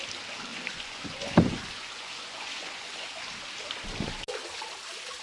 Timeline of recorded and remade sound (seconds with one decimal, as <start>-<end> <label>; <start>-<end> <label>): 0.0-0.5 recorded; 0.5-3.2 remade; 3.2-5.2 recorded